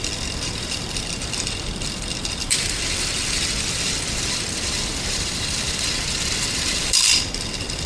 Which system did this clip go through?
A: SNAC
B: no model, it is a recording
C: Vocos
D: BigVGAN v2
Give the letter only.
D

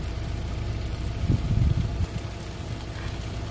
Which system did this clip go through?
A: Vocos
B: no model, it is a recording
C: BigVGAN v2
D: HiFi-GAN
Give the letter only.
B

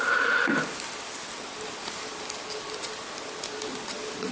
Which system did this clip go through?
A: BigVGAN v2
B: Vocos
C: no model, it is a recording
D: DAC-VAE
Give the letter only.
C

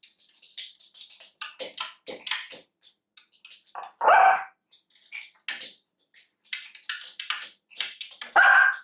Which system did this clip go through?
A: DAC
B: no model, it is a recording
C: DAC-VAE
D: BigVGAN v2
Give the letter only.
B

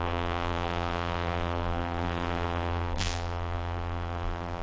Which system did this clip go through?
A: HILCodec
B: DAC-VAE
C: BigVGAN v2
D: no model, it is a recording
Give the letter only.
C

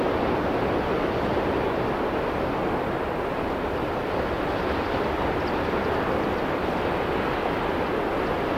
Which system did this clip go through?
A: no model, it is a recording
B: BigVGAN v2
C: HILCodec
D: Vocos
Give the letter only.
A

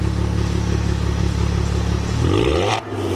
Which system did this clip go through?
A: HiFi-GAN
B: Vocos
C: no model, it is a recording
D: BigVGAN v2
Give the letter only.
C